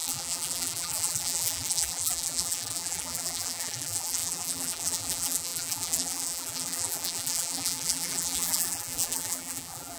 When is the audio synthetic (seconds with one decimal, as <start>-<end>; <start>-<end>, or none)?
0.0-10.0

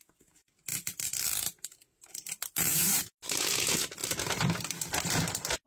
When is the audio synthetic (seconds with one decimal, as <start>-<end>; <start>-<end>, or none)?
0.7-3.0; 4.0-4.8

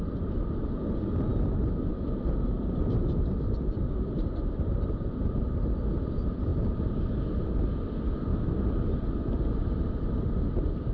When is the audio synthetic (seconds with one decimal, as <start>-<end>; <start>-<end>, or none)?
1.3-5.8; 6.5-7.6; 8.3-10.1

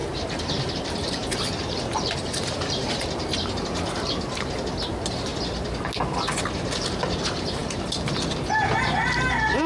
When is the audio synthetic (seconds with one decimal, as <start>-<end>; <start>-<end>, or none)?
0.0-5.3; 6.8-9.7

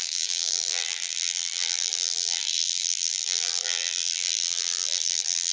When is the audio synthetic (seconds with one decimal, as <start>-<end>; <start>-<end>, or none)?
0.0-5.5

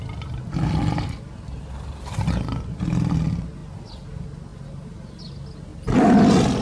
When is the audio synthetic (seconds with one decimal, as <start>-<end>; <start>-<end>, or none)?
3.6-4.1; 5.7-6.6